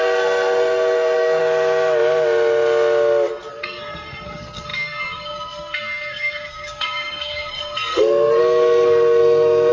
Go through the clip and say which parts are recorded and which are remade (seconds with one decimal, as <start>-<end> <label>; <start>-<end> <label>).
0.0-1.4 remade; 1.4-3.5 recorded; 3.5-9.7 remade